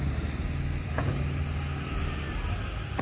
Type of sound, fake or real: real